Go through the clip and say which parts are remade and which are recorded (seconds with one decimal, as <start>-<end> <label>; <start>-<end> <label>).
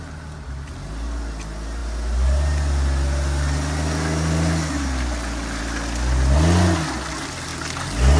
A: 0.0-8.2 recorded